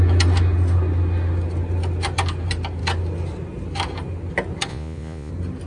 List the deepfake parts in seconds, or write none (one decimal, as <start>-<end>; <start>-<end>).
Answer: 4.7-5.3